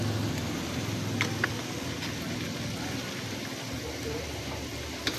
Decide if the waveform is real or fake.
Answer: real